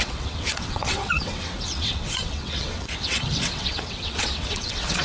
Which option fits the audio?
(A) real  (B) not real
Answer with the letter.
B